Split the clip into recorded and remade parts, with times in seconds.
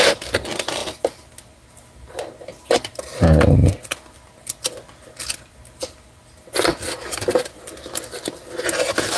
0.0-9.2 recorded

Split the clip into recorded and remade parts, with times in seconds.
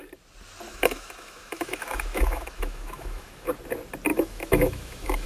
0.0-0.7 recorded; 0.7-3.5 remade; 3.5-4.1 recorded; 4.1-5.3 remade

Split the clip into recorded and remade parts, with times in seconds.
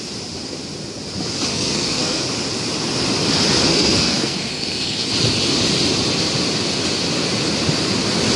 0.0-1.5 recorded; 1.5-2.2 remade; 2.2-3.7 recorded; 3.7-5.1 remade; 5.1-8.4 recorded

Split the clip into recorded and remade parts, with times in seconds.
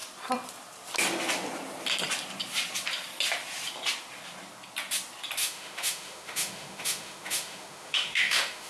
0.0-5.4 recorded; 5.4-8.7 remade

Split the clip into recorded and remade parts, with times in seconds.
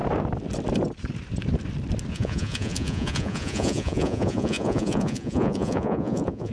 0.0-2.1 recorded; 2.1-6.5 remade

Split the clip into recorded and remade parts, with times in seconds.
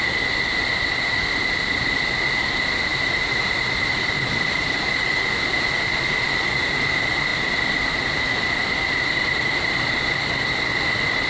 0.0-11.3 recorded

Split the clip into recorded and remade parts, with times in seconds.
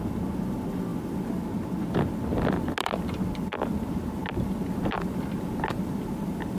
0.0-6.6 recorded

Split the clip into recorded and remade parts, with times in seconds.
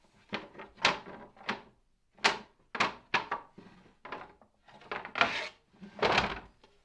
0.0-6.8 recorded